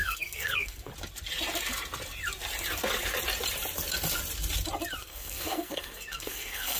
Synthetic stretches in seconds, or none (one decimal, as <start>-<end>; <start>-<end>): 0.0-0.9; 5.0-6.8